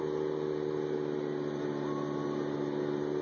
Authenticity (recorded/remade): recorded